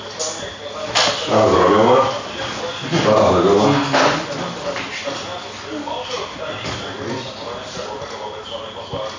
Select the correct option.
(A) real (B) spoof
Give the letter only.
A